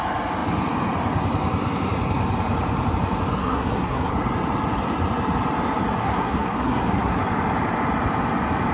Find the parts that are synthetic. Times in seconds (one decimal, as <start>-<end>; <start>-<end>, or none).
3.4-4.1; 6.0-7.2